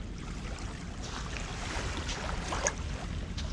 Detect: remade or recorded recorded